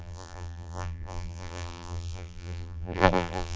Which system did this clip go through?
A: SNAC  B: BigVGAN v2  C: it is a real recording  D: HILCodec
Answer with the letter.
B